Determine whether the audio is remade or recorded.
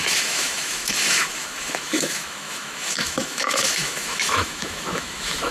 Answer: remade